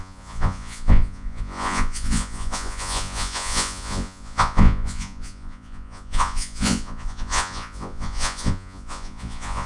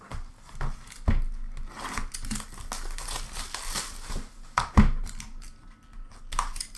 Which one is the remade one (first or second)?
first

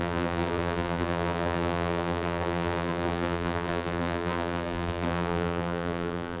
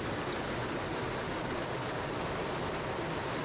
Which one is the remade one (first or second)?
first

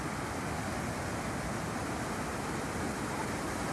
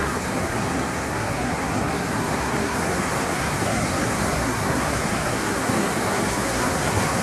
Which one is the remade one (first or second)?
second